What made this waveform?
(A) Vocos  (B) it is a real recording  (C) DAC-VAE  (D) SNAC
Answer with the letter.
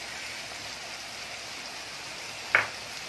B